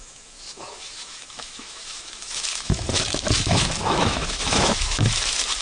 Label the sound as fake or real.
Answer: fake